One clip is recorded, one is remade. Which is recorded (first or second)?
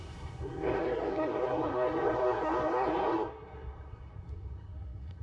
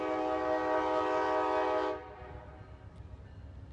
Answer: second